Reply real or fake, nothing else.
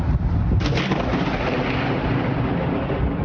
real